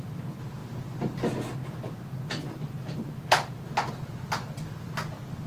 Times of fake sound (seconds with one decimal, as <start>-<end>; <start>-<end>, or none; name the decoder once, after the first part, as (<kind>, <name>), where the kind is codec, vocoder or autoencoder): none